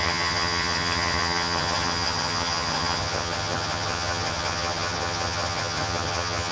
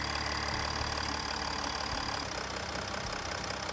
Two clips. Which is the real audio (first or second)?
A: second